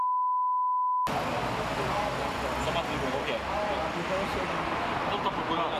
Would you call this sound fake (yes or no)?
no